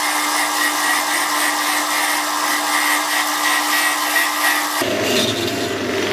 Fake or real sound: real